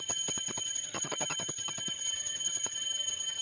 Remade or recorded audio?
remade